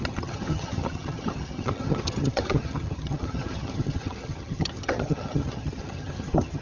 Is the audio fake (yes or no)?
yes